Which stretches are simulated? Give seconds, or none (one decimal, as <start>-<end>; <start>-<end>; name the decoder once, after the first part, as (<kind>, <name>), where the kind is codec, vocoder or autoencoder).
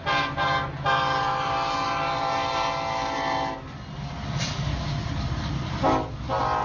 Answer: none